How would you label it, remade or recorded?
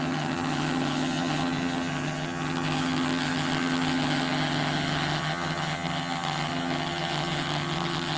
remade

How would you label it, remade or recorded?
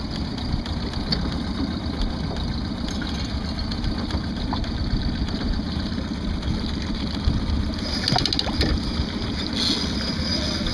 recorded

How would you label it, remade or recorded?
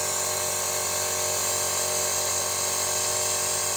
recorded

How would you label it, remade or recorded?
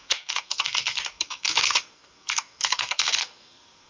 remade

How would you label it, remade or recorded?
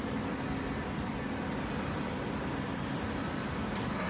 recorded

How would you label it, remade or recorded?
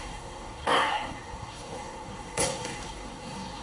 remade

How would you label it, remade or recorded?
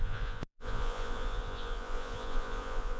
remade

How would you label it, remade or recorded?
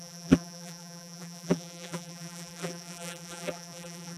remade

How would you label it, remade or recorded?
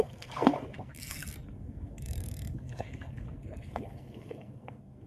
remade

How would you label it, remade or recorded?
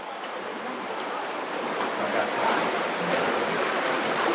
recorded